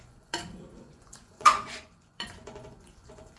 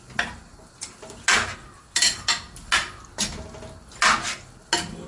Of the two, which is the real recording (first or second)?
second